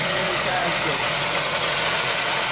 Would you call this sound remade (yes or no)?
yes